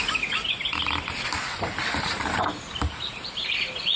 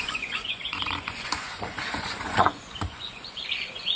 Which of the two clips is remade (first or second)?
second